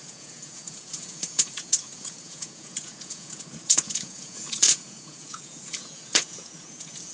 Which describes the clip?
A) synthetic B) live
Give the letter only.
A